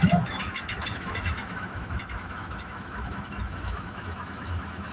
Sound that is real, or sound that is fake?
fake